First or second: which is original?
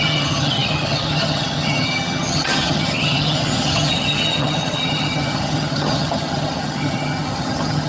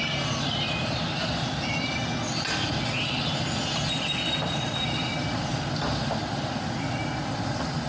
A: second